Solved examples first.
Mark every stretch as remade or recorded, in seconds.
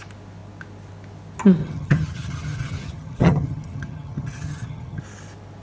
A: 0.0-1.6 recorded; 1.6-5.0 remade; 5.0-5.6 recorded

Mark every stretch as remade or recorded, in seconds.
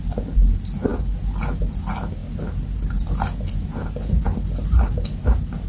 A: 0.0-5.7 recorded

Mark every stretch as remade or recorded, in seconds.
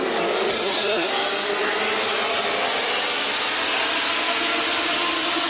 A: 0.0-0.5 recorded; 0.5-1.1 remade; 1.1-5.5 recorded